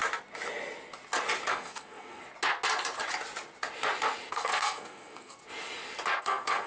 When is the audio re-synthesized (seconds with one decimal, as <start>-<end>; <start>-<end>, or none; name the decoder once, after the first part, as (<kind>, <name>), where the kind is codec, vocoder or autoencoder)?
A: 1.5-2.2 (codec, SNAC); 4.3-5.4; 6.2-6.7